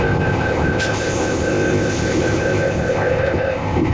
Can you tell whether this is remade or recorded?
remade